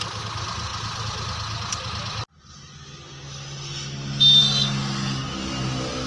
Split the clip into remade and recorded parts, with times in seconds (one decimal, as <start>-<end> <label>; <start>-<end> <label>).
0.0-6.1 recorded